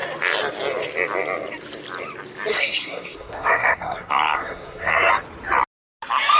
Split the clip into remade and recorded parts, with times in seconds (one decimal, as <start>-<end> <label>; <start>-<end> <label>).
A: 0.0-2.5 recorded; 2.5-5.1 remade; 5.1-6.4 recorded